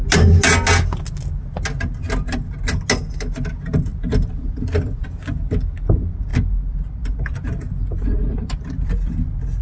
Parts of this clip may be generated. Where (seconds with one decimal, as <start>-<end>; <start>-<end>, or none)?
3.9-5.0; 6.3-9.6